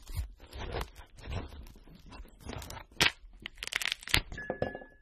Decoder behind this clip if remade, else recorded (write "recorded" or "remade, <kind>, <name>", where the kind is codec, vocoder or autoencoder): recorded